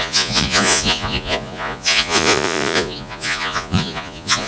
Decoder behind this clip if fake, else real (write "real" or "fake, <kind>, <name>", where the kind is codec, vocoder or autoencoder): fake, vocoder, Vocos